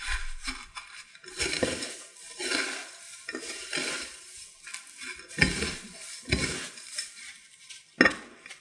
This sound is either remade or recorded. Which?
recorded